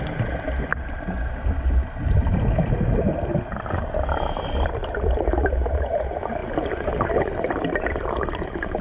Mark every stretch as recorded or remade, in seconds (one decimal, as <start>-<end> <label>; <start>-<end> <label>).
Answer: 0.0-8.8 recorded